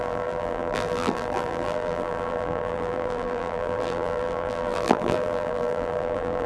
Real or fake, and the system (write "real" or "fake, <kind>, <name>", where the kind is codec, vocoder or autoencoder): fake, vocoder, BigVGAN v2